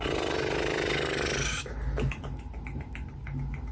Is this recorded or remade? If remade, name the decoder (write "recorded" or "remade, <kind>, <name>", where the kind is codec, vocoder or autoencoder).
recorded